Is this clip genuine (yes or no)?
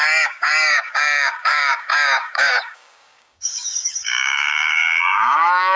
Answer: no